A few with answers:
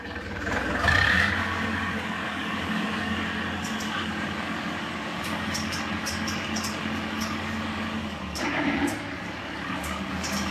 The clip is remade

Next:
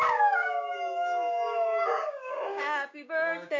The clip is remade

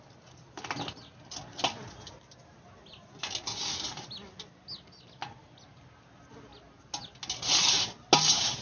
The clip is recorded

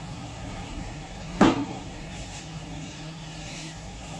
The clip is remade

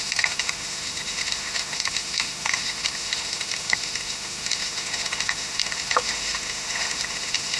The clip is remade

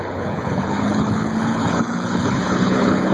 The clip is remade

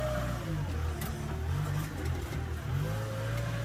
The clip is recorded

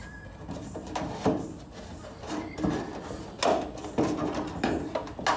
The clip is recorded